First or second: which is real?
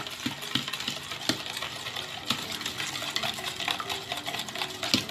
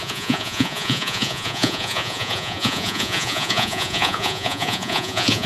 first